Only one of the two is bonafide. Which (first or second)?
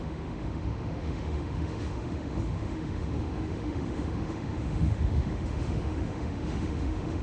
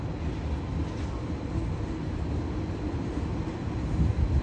second